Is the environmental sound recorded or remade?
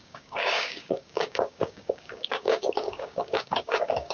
remade